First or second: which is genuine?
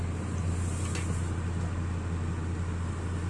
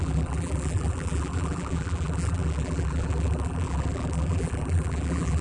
first